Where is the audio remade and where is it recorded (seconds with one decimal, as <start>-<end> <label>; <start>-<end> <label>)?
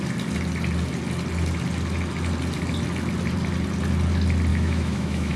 0.0-4.5 recorded; 4.5-5.4 remade